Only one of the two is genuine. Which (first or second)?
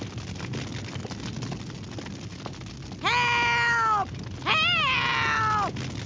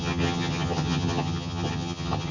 first